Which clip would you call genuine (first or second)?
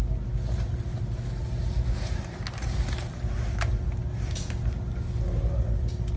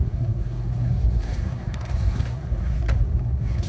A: first